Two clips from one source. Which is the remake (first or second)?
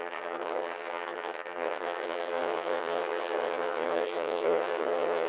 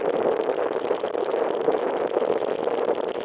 first